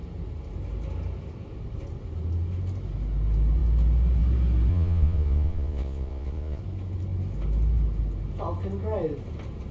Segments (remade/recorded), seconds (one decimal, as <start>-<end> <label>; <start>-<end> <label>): 0.0-4.7 recorded; 4.7-6.6 remade; 6.6-9.7 recorded